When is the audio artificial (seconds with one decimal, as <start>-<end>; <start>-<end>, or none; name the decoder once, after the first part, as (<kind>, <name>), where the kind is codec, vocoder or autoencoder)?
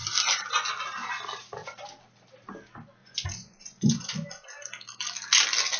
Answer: 3.0-4.1 (vocoder, Vocos)